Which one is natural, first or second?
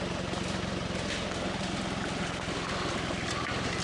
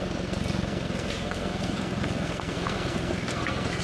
first